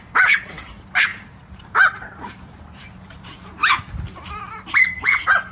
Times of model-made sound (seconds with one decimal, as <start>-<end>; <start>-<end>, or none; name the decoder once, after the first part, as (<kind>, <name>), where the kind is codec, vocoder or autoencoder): 1.1-3.8 (vocoder, BigVGAN v2)

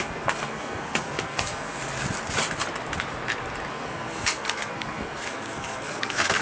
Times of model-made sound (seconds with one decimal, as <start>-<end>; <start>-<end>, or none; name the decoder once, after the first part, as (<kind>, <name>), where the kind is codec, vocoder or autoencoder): 0.0-1.8 (codec, SNAC); 3.7-6.4